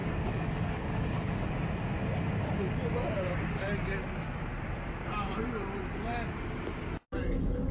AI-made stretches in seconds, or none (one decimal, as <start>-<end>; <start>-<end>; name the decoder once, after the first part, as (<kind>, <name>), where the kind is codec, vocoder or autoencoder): 0.0-1.5 (codec, DAC)